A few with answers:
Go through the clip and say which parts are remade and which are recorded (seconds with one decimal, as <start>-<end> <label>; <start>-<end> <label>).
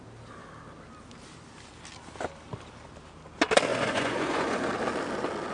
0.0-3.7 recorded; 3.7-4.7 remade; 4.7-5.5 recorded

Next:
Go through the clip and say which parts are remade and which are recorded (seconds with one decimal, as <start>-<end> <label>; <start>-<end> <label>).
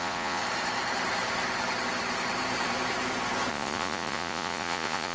0.0-0.4 remade; 0.4-3.5 recorded; 3.5-5.1 remade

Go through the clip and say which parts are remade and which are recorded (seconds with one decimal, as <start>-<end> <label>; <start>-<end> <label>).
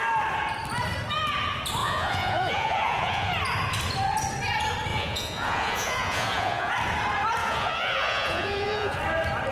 0.0-1.8 recorded; 1.8-3.3 remade; 3.3-4.9 recorded; 4.9-6.7 remade; 6.7-7.4 recorded; 7.4-9.0 remade; 9.0-9.5 recorded